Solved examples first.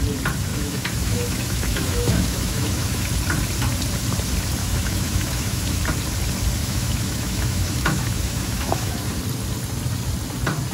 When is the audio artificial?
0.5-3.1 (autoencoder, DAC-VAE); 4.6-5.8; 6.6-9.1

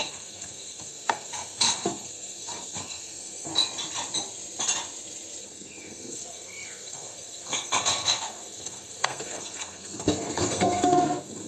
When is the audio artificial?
0.0-3.5 (codec, SNAC); 5.4-11.5